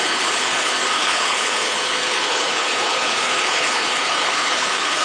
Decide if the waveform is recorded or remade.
remade